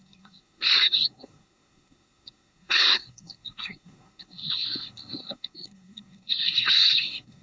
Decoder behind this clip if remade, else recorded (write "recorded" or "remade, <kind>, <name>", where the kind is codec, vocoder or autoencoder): remade, codec, SNAC